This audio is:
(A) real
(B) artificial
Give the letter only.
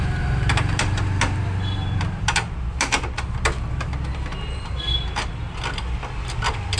A